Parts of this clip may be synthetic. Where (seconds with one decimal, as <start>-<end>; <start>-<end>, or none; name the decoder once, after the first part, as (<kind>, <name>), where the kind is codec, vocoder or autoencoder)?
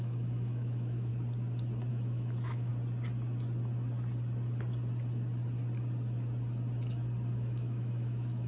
0.0-1.1 (autoencoder, DAC-VAE); 1.9-2.7; 7.3-8.5